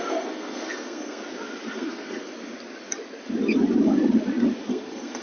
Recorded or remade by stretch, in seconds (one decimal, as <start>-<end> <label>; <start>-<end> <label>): 0.0-1.2 remade; 1.2-1.7 recorded; 1.7-2.3 remade; 2.3-4.7 recorded; 4.7-5.2 remade